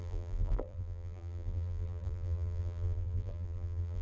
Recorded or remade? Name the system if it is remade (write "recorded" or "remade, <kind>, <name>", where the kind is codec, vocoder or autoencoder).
remade, vocoder, BigVGAN v2